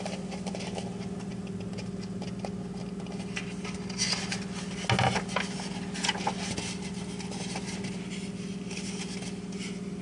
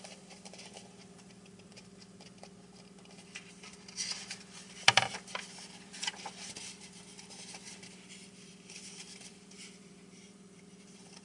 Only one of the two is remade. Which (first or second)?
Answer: second